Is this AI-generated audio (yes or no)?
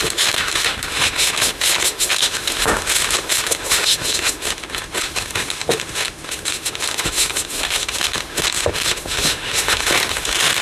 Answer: yes